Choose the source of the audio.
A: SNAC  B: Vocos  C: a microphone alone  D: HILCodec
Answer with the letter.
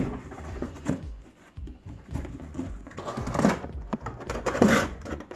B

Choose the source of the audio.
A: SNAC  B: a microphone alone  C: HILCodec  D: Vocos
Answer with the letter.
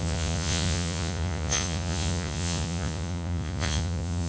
D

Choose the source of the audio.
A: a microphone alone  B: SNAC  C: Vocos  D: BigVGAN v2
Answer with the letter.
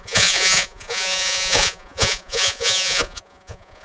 C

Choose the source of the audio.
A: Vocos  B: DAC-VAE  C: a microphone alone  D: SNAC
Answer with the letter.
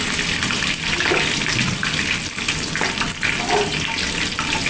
C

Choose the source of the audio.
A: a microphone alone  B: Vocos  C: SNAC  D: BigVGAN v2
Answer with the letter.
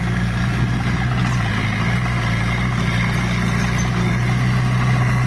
A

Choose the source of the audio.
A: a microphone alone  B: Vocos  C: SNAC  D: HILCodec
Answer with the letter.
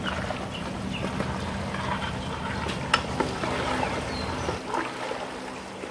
A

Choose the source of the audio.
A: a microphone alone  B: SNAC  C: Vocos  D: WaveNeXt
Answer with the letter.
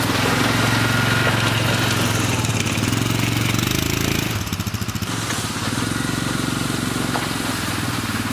A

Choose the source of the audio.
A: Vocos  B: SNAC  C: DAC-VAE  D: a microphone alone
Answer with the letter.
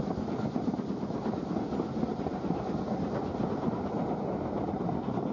D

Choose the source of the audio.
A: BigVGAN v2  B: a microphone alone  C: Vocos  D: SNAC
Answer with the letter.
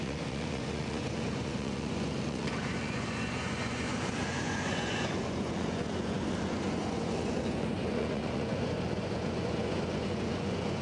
C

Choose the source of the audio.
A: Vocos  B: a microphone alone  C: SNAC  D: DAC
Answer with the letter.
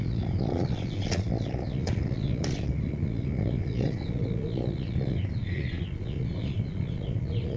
A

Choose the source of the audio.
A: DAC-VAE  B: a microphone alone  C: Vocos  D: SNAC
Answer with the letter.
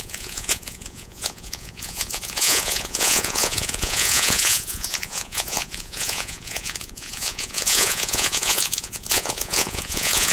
C